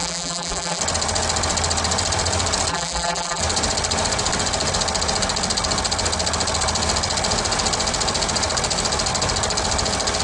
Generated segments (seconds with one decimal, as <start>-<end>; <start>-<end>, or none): 0.0-0.8; 2.7-3.4